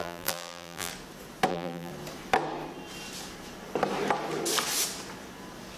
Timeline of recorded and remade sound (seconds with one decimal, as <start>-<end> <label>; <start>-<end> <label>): 0.0-0.9 remade; 0.9-1.5 recorded; 1.5-1.9 remade; 1.9-5.8 recorded